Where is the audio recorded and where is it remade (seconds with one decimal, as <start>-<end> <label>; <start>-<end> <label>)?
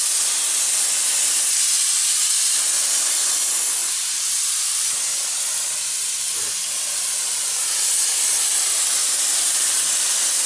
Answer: 0.0-3.8 recorded; 3.8-7.6 remade; 7.6-10.5 recorded